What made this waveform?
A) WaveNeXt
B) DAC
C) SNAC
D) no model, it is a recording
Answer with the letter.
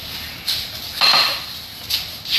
D